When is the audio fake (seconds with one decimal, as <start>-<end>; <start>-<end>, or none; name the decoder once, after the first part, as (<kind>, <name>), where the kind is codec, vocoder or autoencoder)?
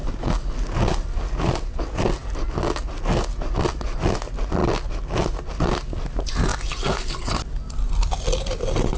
none